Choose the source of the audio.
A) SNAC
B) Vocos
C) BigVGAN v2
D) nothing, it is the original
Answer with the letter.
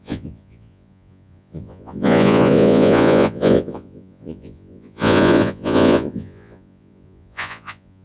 B